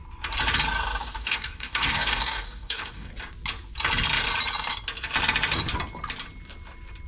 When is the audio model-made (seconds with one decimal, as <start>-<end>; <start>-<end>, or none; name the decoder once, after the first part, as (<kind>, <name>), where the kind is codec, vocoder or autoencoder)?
1.0-3.1 (codec, DAC)